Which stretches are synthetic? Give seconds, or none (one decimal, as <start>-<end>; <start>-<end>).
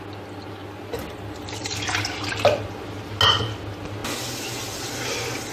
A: none